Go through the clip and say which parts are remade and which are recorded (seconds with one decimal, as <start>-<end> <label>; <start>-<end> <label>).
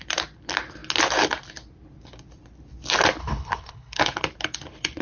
0.0-3.2 recorded; 3.2-4.0 remade; 4.0-5.0 recorded